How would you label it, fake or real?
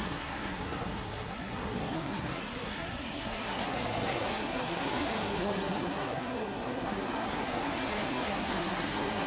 fake